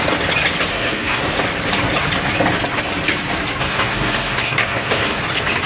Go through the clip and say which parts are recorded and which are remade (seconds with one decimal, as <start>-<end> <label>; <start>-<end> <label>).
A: 0.0-0.7 recorded; 0.7-1.2 remade; 1.2-3.6 recorded; 3.6-5.2 remade; 5.2-5.7 recorded